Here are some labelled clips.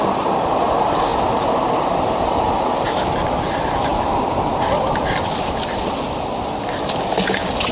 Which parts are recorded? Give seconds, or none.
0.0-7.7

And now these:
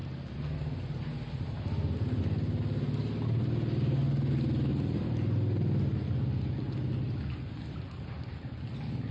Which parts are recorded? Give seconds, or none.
0.0-9.1

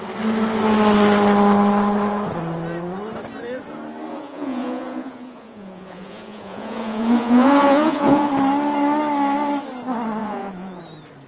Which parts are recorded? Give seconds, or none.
0.0-4.1; 8.3-10.2; 10.8-11.3

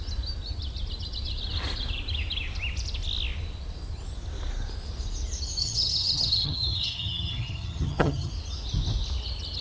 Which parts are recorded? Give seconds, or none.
0.0-5.6; 8.3-9.6

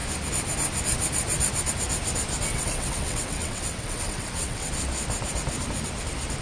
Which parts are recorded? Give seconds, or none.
0.0-2.5; 4.7-6.4

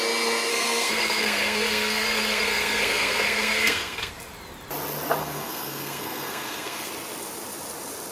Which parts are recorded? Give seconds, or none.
0.0-0.5; 4.1-5.2; 6.9-8.1